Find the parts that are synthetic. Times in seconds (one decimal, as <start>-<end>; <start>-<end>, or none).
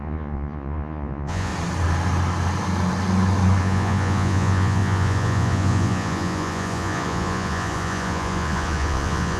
0.0-1.5; 3.6-9.4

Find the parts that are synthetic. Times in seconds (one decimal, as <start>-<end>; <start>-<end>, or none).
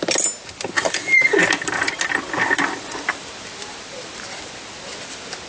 none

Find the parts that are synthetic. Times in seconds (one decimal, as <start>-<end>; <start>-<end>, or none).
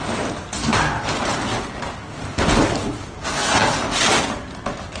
none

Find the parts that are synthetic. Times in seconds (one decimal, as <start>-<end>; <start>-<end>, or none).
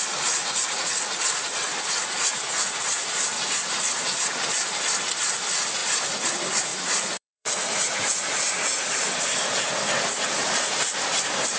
1.7-2.7; 6.7-9.2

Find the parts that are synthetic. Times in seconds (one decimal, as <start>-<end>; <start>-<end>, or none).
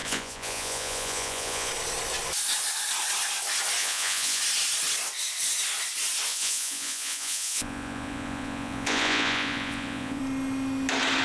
0.0-1.7; 3.8-4.4; 6.3-10.2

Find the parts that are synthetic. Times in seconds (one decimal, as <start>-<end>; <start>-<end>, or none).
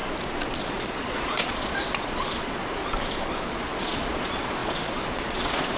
0.6-2.8; 3.5-5.8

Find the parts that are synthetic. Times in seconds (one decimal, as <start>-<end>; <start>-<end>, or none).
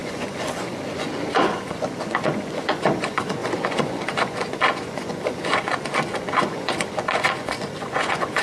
0.0-8.4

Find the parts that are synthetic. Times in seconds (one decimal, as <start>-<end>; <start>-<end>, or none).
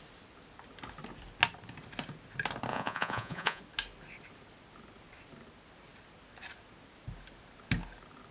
2.7-3.6